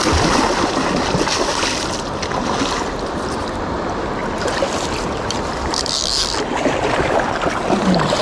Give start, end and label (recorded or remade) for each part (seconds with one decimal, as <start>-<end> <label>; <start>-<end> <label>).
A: 0.0-8.2 recorded